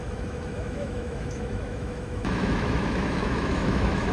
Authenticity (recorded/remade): remade